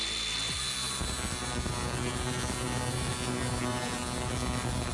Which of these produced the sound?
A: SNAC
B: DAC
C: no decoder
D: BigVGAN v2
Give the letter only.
C